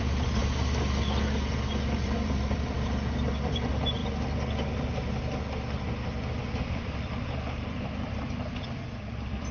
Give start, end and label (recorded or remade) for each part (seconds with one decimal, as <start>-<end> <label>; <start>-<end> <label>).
0.0-0.4 remade; 0.4-2.0 recorded; 2.0-4.0 remade; 4.0-6.4 recorded; 6.4-9.5 remade